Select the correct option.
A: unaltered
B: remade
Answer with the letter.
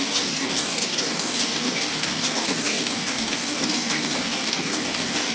B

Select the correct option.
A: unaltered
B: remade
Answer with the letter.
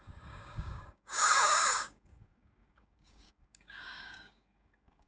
B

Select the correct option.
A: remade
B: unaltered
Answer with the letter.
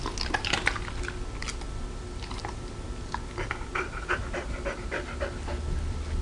B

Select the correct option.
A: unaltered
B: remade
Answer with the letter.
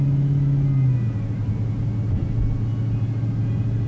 A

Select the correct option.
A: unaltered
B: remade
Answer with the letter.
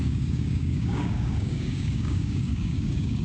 B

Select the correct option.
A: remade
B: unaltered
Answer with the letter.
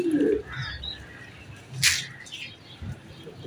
B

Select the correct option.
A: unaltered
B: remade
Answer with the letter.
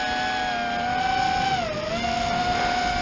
A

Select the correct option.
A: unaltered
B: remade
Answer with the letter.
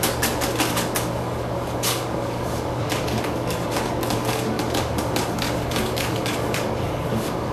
B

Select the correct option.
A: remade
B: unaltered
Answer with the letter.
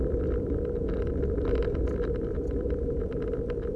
B